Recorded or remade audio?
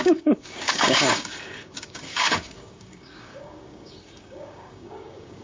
remade